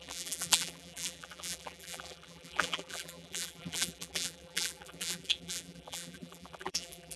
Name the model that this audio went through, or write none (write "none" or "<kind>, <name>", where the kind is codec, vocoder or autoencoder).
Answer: vocoder, BigVGAN v2